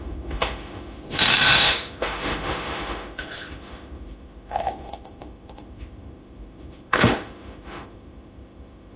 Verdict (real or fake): fake